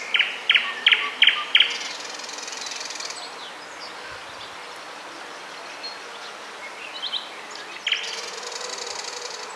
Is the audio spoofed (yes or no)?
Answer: no